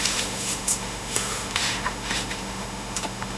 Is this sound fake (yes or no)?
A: yes